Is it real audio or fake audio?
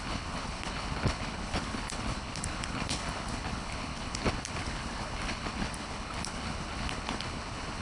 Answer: fake